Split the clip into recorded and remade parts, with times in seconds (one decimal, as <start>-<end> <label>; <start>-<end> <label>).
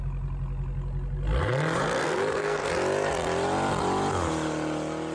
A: 0.0-2.0 recorded; 2.0-2.7 remade; 2.7-5.1 recorded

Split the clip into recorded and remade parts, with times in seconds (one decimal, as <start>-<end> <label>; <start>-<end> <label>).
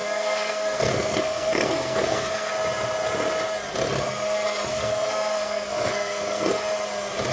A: 0.0-2.5 remade; 2.5-4.7 recorded; 4.7-6.5 remade; 6.5-7.3 recorded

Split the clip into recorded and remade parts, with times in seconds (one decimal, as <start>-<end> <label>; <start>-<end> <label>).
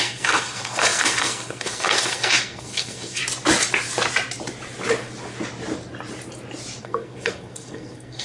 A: 0.0-3.2 remade; 3.2-6.8 recorded; 6.8-8.2 remade